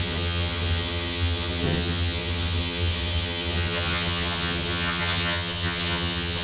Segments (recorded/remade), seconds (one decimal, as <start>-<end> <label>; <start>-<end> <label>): 0.0-6.4 remade